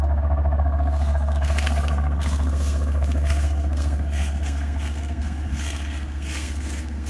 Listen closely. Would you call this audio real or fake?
fake